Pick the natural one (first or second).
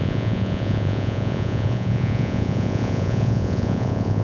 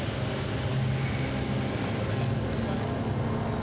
second